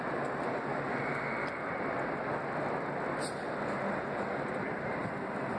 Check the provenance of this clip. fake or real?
real